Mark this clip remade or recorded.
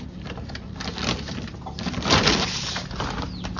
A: recorded